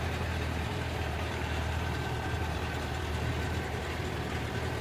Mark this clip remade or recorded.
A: remade